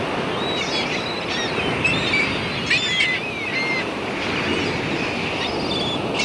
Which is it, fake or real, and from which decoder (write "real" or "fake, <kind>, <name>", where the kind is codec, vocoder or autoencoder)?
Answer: real